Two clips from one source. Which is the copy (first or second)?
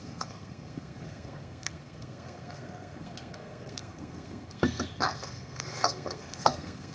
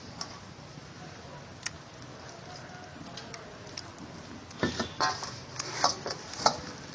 first